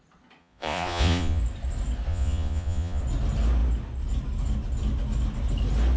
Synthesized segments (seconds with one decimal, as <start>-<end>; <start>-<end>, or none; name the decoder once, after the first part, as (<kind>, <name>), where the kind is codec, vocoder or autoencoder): 0.4-1.4 (vocoder, Vocos); 2.1-3.0